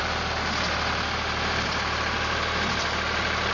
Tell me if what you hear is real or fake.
real